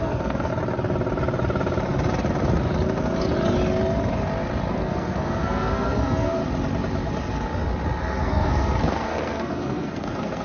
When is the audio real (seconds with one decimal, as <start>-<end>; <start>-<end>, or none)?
0.5-4.7; 6.4-8.0